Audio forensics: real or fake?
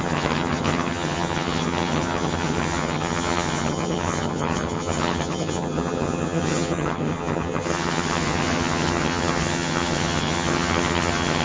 fake